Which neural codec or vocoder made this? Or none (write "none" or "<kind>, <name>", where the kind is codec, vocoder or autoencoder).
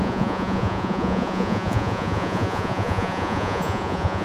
vocoder, Vocos